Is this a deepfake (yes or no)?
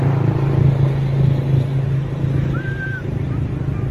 no